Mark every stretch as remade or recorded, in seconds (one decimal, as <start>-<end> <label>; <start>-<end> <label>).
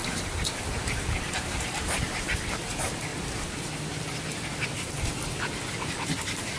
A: 0.0-2.3 remade; 2.3-3.1 recorded; 3.1-3.6 remade; 3.6-6.6 recorded